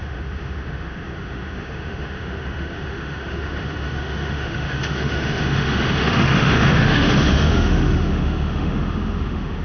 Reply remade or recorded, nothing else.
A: remade